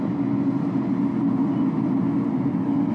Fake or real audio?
real